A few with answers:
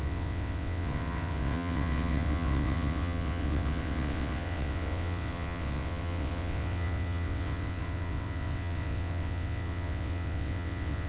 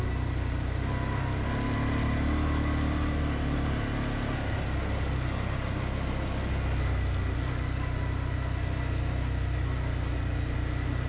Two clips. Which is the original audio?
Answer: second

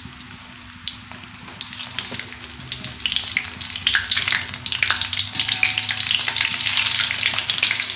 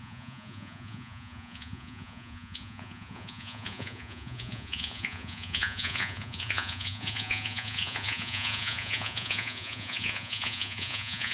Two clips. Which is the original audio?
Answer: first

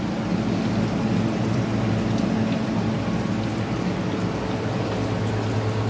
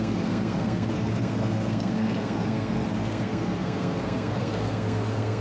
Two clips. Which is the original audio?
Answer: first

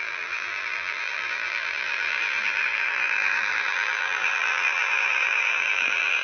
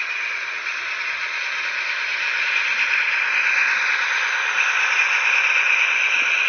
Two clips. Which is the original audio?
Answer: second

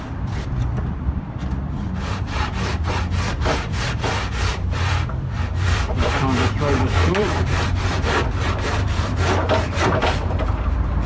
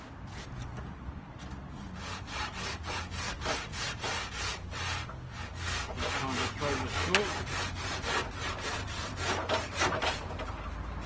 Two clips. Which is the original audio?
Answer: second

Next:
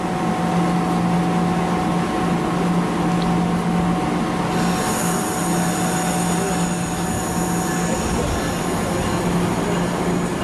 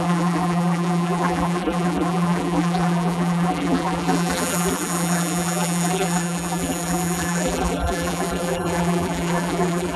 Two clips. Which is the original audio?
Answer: first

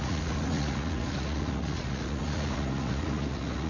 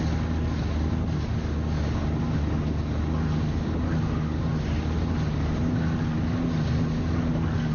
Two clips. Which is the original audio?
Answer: second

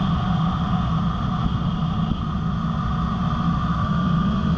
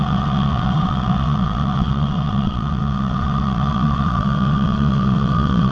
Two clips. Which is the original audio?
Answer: first